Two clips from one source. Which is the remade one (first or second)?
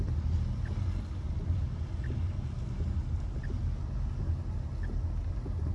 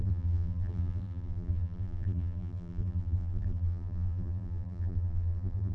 second